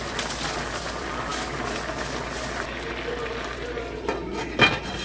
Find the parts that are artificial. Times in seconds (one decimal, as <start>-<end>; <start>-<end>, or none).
0.0-1.3; 4.3-5.0